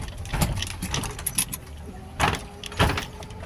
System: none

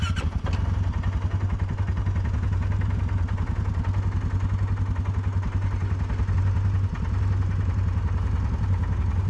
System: none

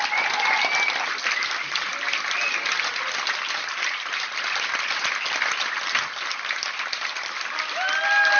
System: none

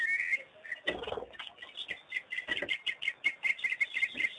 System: none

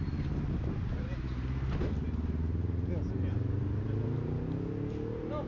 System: none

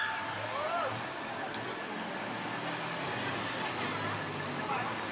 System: none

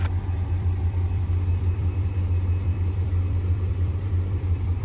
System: vocoder, BigVGAN v2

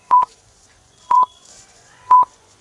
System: vocoder, Vocos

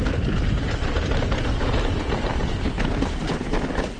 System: vocoder, BigVGAN v2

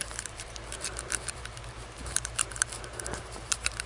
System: vocoder, BigVGAN v2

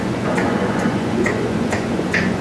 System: vocoder, Vocos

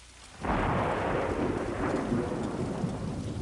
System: none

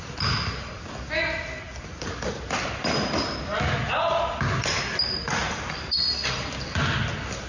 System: none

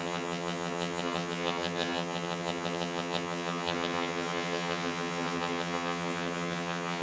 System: vocoder, HiFi-GAN